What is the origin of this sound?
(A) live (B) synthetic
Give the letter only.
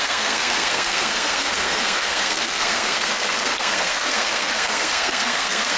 B